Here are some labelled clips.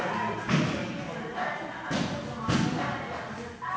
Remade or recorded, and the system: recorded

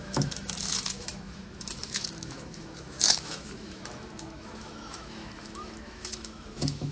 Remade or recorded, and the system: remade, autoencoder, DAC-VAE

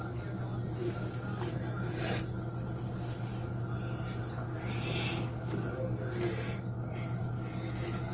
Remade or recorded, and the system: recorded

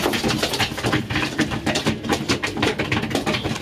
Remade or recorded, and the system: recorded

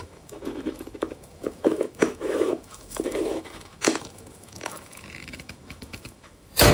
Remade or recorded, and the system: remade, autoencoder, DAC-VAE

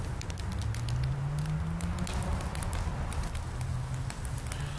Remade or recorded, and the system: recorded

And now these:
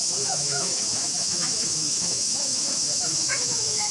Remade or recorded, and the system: remade, autoencoder, DAC-VAE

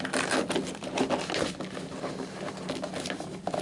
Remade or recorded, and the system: recorded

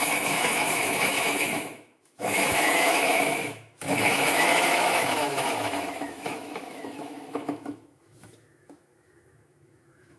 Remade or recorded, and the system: remade, autoencoder, DAC-VAE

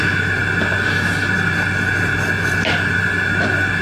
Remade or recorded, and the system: recorded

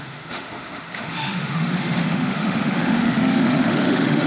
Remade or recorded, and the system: remade, autoencoder, DAC-VAE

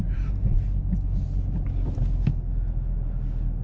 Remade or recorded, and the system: recorded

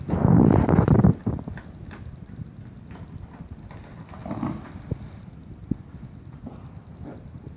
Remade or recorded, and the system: recorded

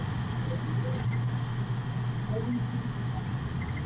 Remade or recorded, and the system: recorded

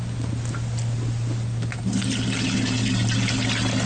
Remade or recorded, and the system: recorded